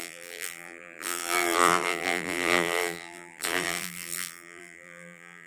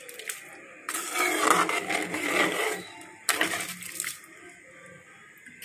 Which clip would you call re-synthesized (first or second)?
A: first